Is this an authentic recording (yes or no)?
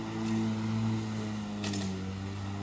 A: yes